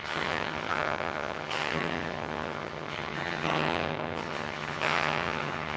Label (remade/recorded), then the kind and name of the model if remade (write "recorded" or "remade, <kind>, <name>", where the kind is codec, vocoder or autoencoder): remade, vocoder, HiFi-GAN